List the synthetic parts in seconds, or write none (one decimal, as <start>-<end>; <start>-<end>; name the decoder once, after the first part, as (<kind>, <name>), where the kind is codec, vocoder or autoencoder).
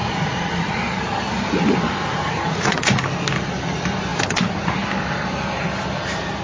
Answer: 0.0-0.8 (vocoder, Vocos); 2.0-3.0